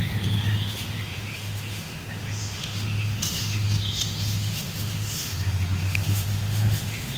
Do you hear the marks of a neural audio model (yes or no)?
yes